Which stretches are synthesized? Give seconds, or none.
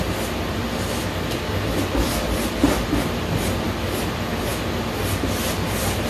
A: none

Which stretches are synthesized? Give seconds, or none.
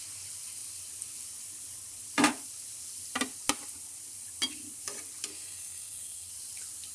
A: 5.3-6.3 (codec, SNAC)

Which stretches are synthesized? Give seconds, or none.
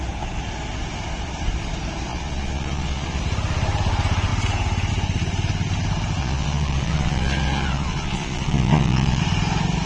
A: 2.1-3.2 (vocoder, Vocos); 6.2-9.2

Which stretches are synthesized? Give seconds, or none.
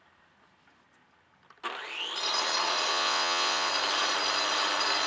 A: 2.9-3.7 (vocoder, WaveNeXt)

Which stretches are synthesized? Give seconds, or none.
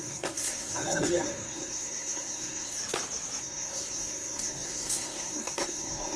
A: 0.0-2.8 (codec, SNAC); 3.4-6.2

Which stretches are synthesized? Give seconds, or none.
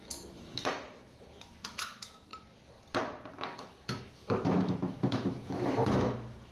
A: 0.0-2.3 (autoencoder, DAC-VAE); 3.3-6.5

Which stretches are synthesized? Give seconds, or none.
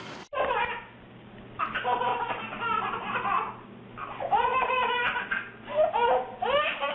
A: none